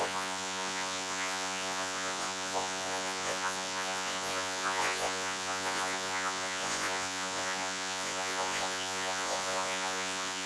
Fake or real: fake